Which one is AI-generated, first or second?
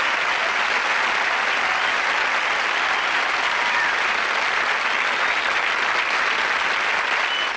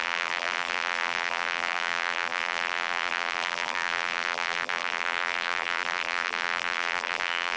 second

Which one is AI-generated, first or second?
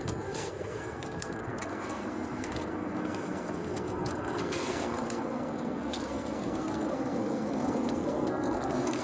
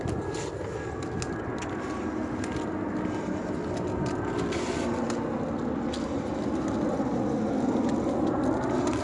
first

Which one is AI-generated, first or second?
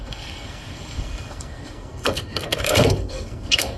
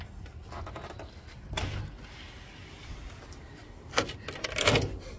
first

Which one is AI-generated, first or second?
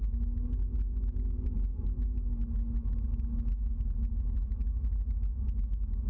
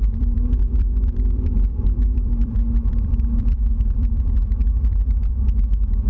second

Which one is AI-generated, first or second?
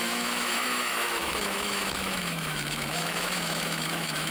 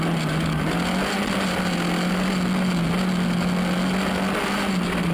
first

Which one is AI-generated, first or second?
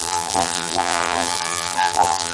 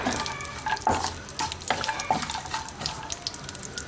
first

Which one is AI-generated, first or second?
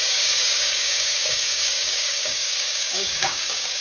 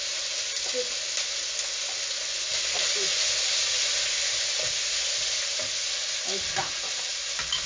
first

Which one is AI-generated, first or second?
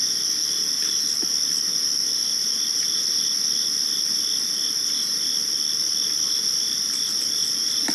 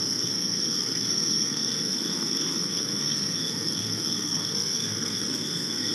second